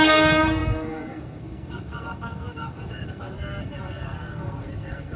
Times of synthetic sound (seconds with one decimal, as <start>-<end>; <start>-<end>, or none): 0.0-5.2